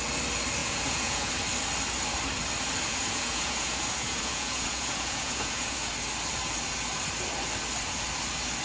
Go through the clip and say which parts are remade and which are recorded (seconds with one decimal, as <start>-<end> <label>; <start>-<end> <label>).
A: 0.0-0.6 recorded; 0.6-1.3 remade; 1.3-2.9 recorded; 2.9-5.9 remade; 5.9-8.6 recorded